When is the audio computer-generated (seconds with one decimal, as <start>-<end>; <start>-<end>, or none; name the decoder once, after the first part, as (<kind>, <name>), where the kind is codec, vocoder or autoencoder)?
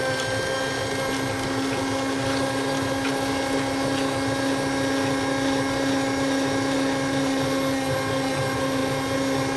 none